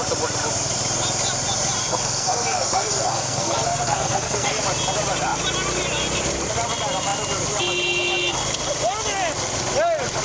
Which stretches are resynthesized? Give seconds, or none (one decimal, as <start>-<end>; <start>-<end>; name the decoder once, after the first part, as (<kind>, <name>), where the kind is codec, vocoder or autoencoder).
1.8-4.6 (codec, SNAC)

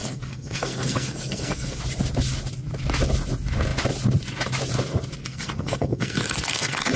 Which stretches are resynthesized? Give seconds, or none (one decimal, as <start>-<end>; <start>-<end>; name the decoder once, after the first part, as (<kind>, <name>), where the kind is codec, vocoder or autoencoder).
0.0-1.8 (codec, SNAC); 5.2-7.0

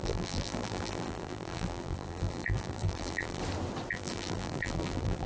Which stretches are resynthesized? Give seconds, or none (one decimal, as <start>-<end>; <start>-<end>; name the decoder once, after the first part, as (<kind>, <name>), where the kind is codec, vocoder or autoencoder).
0.0-3.4 (vocoder, BigVGAN v2); 3.9-5.3

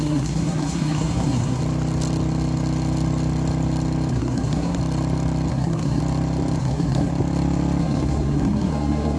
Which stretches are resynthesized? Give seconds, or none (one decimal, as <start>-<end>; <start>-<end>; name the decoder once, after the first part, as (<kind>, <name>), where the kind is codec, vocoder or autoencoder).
0.0-1.6 (codec, SNAC); 4.1-4.8; 5.5-6.0; 6.6-7.1; 7.8-9.2

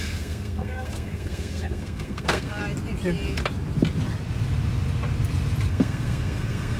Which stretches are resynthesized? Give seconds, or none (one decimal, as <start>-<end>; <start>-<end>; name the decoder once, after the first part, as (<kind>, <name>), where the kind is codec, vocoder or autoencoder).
0.0-2.6 (codec, SNAC); 5.7-6.8

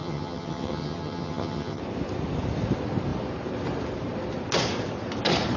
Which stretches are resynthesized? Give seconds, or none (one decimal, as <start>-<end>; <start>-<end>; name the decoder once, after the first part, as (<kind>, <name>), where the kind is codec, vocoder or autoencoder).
0.0-1.8 (vocoder, HiFi-GAN)